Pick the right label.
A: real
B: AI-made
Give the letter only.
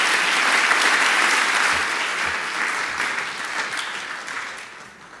A